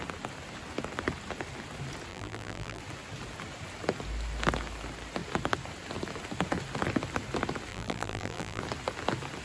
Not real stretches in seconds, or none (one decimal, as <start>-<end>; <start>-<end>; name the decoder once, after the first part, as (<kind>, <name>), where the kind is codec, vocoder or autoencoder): 2.1-2.8 (vocoder, BigVGAN v2); 7.7-8.6